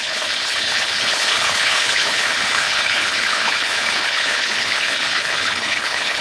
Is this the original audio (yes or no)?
no